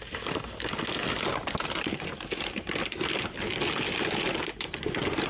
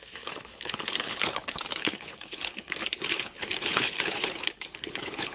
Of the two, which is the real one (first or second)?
first